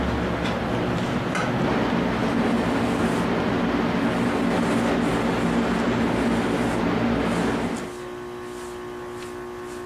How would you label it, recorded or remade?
recorded